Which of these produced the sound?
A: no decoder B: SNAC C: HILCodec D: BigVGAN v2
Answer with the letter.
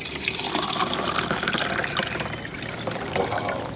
A